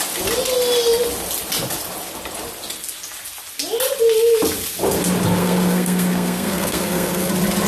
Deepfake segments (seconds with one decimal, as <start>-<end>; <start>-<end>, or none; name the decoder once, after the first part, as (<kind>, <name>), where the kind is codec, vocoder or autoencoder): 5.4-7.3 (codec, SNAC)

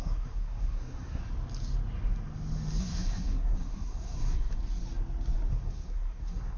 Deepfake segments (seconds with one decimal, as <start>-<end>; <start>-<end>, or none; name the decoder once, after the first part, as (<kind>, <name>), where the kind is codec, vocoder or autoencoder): 0.0-1.2 (codec, SNAC); 2.8-4.5; 5.5-6.6

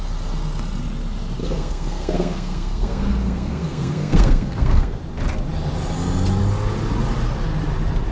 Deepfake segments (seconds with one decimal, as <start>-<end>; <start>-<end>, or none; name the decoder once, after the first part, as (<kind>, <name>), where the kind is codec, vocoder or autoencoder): 1.4-5.0 (codec, SNAC)

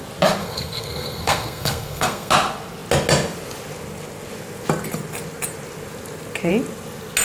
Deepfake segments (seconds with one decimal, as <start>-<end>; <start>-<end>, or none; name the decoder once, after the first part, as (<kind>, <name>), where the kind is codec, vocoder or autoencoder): 0.4-2.3 (codec, SNAC)

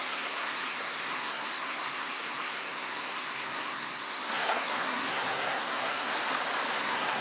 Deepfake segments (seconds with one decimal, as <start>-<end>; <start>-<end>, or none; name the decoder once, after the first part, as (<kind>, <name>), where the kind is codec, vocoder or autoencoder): 0.0-6.1 (codec, SNAC); 6.7-7.2